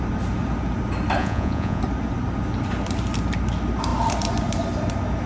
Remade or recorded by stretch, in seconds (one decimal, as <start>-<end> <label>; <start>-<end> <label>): 0.0-1.2 recorded; 1.2-1.8 remade; 1.8-5.3 recorded